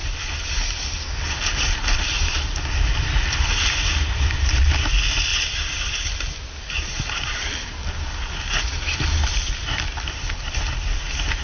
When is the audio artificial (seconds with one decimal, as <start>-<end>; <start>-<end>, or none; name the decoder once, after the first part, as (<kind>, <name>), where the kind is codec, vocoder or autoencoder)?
none